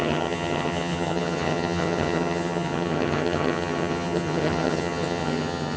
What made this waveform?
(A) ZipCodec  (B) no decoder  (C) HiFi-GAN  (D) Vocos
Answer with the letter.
C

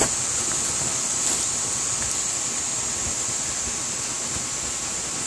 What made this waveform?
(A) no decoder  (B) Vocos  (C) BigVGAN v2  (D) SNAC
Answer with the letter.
A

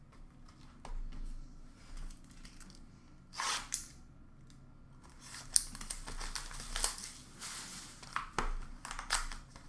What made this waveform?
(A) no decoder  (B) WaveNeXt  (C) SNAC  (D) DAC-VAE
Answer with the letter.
A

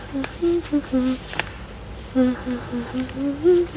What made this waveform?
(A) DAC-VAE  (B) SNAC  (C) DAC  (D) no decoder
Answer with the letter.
D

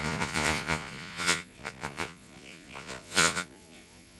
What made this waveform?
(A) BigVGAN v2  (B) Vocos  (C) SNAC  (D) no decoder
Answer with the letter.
B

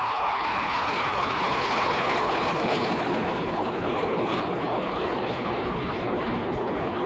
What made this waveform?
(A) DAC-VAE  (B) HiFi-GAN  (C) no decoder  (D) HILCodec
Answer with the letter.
D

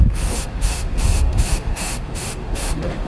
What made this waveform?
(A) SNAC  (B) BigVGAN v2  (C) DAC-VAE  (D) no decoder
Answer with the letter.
C